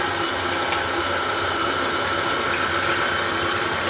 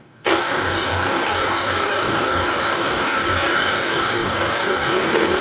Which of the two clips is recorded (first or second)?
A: first